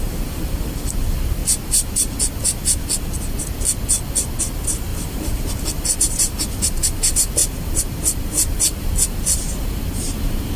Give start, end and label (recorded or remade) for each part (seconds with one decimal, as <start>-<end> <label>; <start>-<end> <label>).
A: 0.0-1.4 remade; 1.4-4.4 recorded; 4.4-10.6 remade